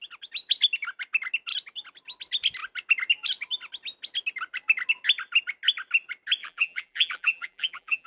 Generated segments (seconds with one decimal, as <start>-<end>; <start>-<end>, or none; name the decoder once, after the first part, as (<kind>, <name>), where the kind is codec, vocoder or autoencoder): 6.4-8.1 (vocoder, BigVGAN v2)